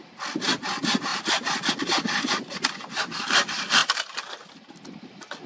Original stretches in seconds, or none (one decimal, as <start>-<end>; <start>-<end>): 0.0-1.1; 1.7-3.8; 4.7-5.5